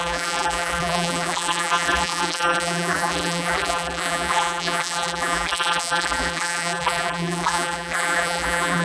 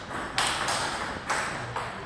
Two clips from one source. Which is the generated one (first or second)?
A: first